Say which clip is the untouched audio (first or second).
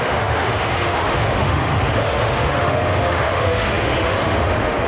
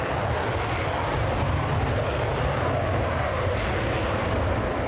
second